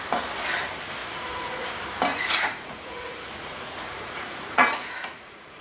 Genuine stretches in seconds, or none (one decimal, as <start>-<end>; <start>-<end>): 0.0-1.0; 1.7-2.1